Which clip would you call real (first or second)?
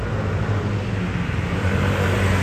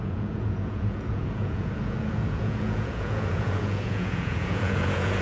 first